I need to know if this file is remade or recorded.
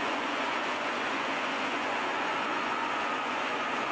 remade